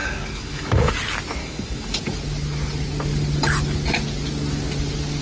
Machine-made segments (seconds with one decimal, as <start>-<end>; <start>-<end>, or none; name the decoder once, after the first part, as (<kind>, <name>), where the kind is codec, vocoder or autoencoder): 0.0-0.9 (codec, DAC); 1.4-2.0